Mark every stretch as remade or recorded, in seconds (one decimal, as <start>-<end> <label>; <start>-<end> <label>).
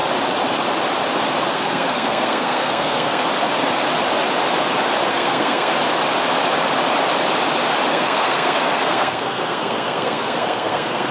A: 0.0-1.5 recorded; 1.5-3.2 remade; 3.2-5.1 recorded; 5.1-5.7 remade; 5.7-7.9 recorded; 7.9-11.1 remade